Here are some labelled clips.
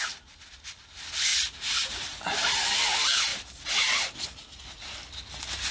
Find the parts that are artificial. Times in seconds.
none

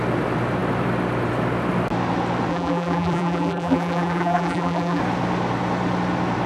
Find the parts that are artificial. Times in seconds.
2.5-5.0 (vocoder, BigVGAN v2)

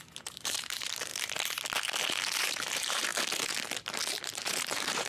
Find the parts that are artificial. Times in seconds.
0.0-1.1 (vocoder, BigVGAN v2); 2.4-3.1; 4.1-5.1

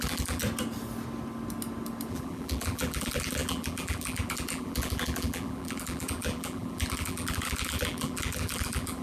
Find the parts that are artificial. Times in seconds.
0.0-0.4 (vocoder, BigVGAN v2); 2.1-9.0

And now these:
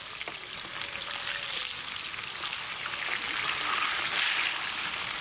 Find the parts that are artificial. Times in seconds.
none